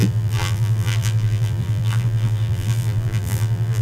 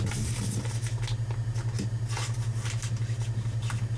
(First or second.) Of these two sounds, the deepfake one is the first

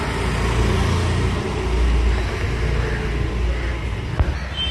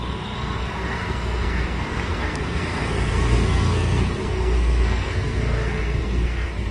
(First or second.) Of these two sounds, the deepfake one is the second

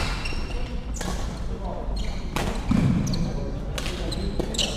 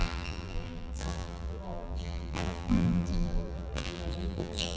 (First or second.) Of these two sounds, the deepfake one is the second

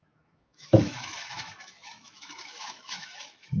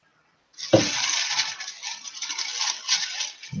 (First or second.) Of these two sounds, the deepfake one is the first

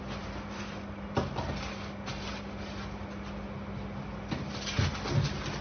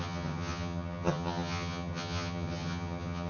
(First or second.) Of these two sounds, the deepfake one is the second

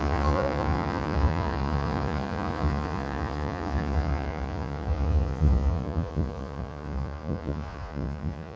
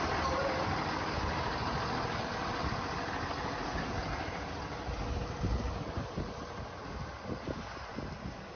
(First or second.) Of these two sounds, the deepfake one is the first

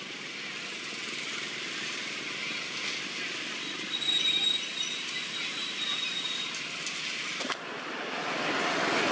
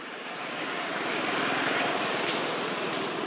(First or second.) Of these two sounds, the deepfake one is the second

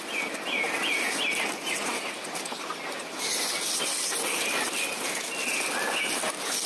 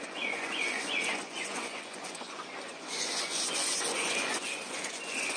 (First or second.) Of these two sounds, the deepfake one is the second